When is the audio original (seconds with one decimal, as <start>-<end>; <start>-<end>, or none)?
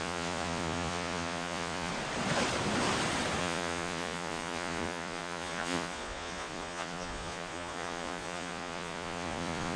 1.9-3.4